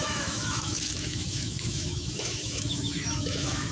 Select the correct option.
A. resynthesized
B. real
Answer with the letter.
A